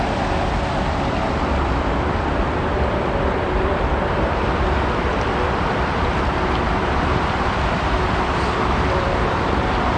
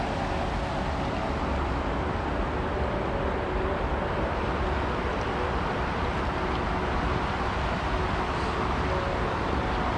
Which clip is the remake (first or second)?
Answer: first